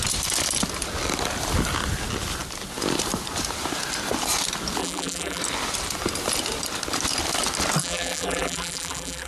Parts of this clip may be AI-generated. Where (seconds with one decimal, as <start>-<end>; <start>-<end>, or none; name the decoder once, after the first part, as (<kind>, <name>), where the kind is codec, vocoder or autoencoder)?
4.8-5.4 (vocoder, BigVGAN v2); 7.8-9.3